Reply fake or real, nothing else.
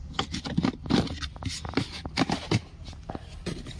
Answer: real